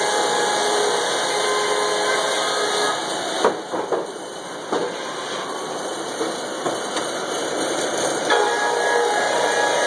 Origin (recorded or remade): recorded